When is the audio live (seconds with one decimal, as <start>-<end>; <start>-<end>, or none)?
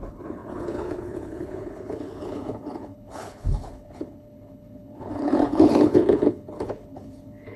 none